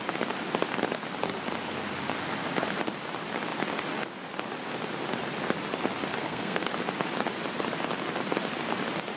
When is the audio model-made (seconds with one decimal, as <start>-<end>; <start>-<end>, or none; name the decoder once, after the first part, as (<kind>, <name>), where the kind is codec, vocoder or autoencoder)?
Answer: 6.2-6.7 (codec, SNAC)